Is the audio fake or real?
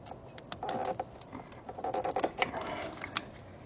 real